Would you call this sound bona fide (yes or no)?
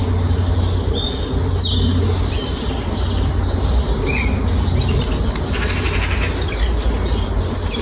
yes